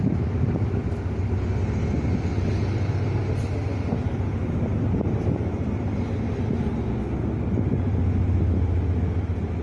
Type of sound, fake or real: real